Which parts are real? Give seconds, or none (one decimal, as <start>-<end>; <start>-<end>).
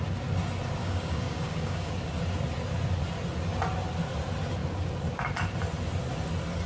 0.0-0.8; 1.9-6.7